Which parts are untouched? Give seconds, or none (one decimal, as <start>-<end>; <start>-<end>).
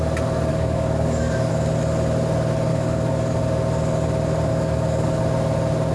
0.0-0.5; 1.5-2.7; 3.4-4.5; 5.2-5.9